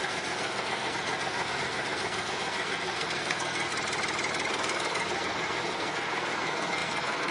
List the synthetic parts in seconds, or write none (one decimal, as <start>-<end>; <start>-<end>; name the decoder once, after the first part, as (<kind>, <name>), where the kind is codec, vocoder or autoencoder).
0.0-3.7 (codec, SNAC); 4.5-7.3